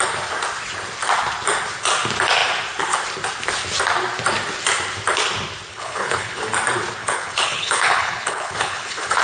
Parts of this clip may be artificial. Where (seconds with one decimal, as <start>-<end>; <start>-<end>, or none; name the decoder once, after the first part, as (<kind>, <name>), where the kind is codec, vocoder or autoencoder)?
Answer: 5.7-6.4 (codec, HILCodec); 7.0-9.2